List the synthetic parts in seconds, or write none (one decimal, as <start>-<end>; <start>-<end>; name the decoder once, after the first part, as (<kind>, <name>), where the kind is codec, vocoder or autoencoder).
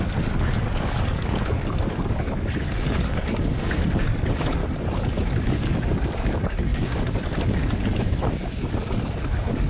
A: 0.0-4.6 (codec, DAC); 5.4-9.7